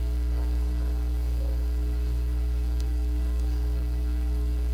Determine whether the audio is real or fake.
fake